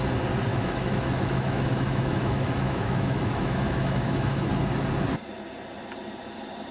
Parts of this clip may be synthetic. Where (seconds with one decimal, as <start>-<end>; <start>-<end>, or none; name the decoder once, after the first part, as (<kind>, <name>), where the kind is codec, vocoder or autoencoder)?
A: 0.5-4.5 (autoencoder, DAC-VAE)